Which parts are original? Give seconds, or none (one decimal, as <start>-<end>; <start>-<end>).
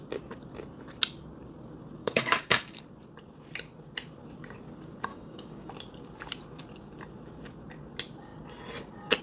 0.0-2.0; 2.8-5.1; 5.7-9.2